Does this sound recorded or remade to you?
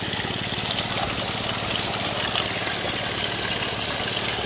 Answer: recorded